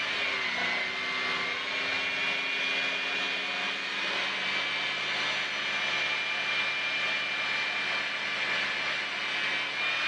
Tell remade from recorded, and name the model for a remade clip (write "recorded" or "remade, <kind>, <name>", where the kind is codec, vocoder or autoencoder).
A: recorded